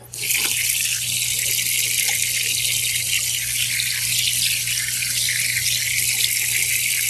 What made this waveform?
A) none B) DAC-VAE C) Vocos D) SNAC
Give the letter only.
A